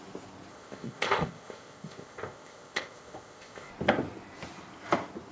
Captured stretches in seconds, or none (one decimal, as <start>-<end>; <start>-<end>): 0.0-0.5; 3.7-5.3